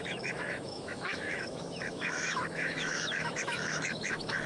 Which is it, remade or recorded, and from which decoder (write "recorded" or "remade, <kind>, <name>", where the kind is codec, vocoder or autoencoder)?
remade, autoencoder, DAC-VAE